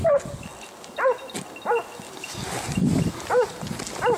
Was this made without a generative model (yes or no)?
yes